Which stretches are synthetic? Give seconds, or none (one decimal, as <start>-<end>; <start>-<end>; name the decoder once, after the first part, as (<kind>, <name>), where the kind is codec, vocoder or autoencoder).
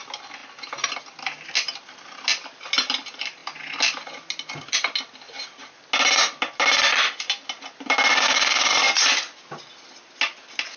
8.1-8.7 (codec, DAC)